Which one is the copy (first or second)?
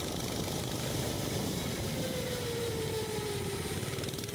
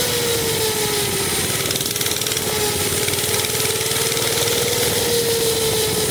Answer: first